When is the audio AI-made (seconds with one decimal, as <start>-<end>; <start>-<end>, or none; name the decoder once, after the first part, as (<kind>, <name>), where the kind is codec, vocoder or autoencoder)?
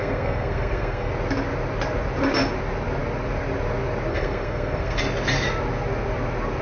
0.0-1.1 (codec, SNAC); 4.1-5.0